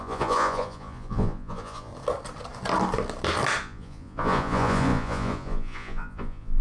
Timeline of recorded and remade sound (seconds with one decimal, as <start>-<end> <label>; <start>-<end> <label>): 0.0-1.9 remade; 1.9-3.6 recorded; 3.6-6.6 remade